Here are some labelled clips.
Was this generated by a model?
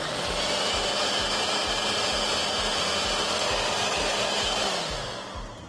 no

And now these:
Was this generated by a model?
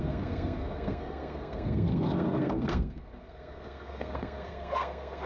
yes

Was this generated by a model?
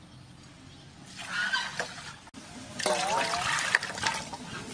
no